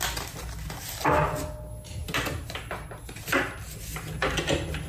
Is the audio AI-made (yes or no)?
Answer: no